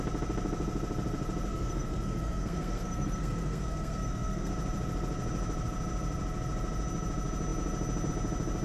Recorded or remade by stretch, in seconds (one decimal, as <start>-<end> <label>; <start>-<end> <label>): 0.0-1.5 recorded; 1.5-4.5 remade; 4.5-8.6 recorded